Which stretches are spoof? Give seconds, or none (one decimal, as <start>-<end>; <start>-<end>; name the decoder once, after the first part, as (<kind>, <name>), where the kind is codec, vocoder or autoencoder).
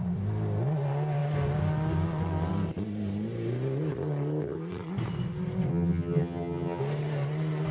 5.7-6.8 (vocoder, HiFi-GAN)